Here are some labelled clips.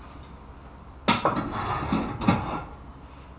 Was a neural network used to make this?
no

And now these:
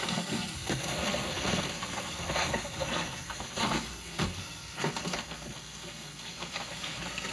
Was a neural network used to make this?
yes